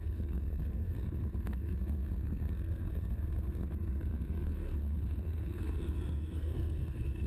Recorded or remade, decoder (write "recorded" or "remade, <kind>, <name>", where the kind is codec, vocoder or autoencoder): remade, codec, SNAC